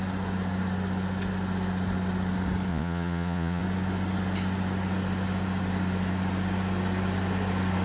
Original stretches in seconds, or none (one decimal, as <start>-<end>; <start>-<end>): 0.0-2.7; 3.6-7.8